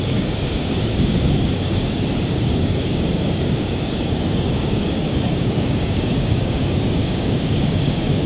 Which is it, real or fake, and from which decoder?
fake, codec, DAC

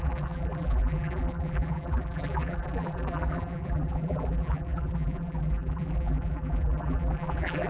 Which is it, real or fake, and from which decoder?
fake, vocoder, BigVGAN v2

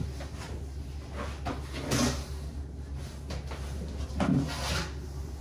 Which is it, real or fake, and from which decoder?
real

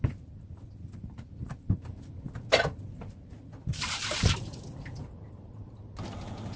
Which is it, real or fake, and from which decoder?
real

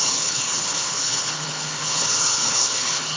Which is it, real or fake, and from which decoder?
fake, codec, HILCodec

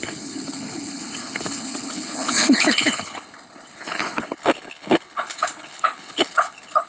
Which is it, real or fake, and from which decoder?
fake, codec, HILCodec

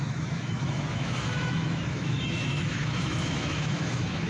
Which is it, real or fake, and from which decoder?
fake, autoencoder, DAC-VAE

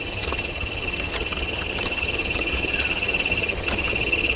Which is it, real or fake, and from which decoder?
fake, vocoder, HiFi-GAN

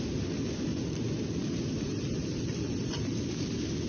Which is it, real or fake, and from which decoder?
real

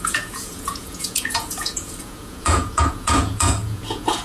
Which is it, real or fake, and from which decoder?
fake, vocoder, Vocos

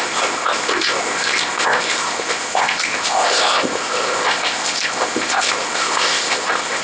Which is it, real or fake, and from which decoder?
fake, codec, ZipCodec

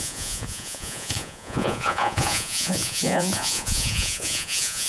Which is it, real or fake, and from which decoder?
fake, vocoder, Vocos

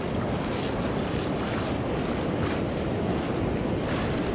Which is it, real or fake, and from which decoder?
real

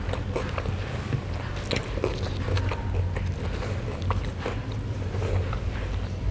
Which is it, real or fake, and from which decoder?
real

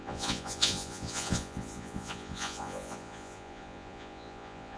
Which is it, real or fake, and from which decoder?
fake, vocoder, Vocos